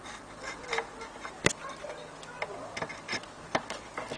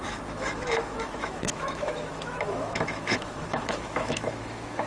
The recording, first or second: first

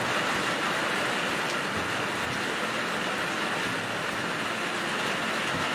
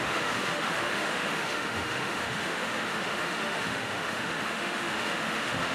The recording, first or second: first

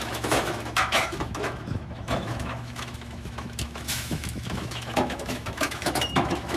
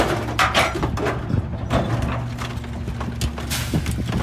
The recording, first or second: second